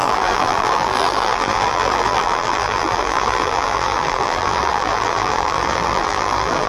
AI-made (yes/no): yes